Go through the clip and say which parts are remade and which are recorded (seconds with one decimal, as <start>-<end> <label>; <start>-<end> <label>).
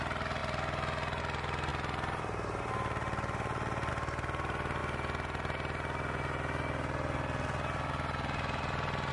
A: 0.0-0.4 remade; 0.4-1.2 recorded; 1.2-4.8 remade; 4.8-9.1 recorded